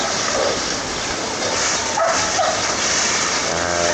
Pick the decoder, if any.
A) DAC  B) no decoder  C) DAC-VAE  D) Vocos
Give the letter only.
B